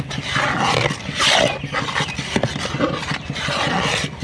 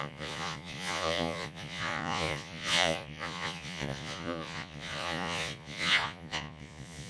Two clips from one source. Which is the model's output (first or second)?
second